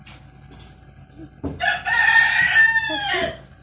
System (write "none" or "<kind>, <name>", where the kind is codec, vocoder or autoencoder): none